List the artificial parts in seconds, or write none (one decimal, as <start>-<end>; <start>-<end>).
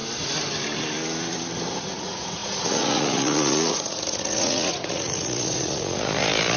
1.8-6.6